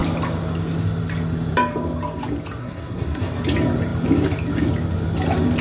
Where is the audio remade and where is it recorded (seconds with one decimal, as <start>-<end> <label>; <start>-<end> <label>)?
0.0-2.6 recorded; 2.6-3.2 remade; 3.2-5.6 recorded